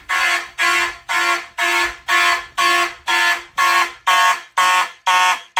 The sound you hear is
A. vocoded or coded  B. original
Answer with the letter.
B